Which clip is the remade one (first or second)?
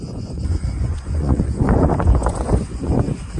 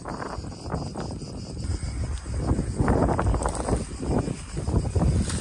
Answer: first